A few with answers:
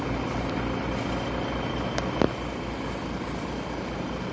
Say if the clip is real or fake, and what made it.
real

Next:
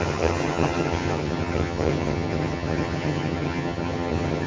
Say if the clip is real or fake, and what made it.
fake, vocoder, HiFi-GAN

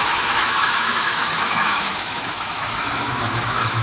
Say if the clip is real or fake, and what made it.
fake, autoencoder, DAC-VAE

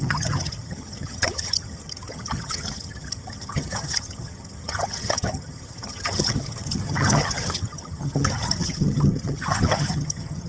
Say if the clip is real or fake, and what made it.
fake, vocoder, HiFi-GAN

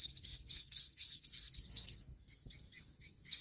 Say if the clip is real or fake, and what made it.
fake, codec, SNAC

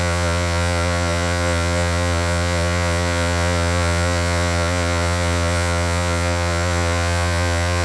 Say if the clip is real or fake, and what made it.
fake, vocoder, Vocos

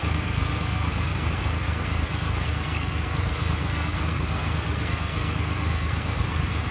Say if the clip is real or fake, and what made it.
fake, codec, SNAC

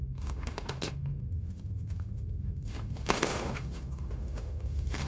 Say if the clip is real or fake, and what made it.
fake, autoencoder, DAC-VAE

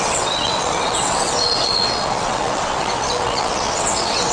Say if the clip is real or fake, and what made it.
fake, vocoder, WaveNeXt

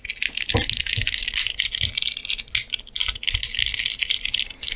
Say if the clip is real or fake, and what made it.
real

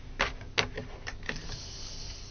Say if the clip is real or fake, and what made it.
real